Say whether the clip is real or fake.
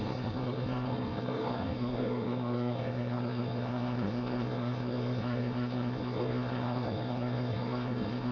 fake